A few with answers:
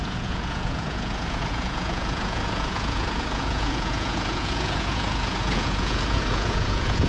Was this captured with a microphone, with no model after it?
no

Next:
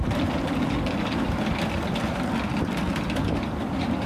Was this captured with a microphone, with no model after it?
yes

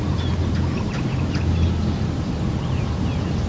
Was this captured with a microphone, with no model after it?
yes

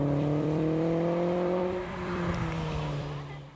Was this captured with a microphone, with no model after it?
no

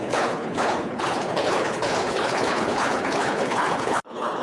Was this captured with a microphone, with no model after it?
no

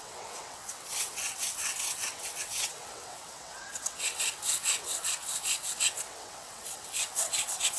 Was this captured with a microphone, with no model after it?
no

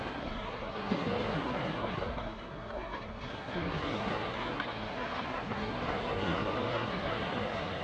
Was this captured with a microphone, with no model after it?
no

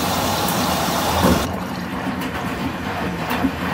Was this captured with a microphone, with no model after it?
no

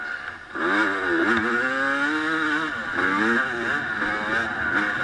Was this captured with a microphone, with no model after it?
yes